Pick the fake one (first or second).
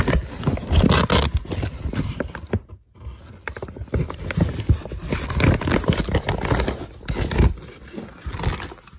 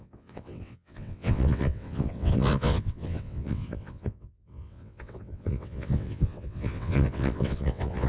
second